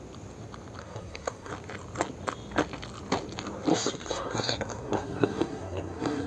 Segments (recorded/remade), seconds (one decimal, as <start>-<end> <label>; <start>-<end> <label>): 0.0-0.8 recorded; 0.8-1.5 remade; 1.5-3.7 recorded; 3.7-6.3 remade